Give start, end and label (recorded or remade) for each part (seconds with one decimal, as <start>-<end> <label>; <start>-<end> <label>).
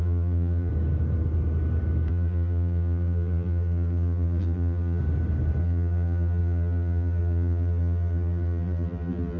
0.0-0.7 remade; 0.7-2.1 recorded; 2.1-5.0 remade; 5.0-5.6 recorded; 5.6-9.4 remade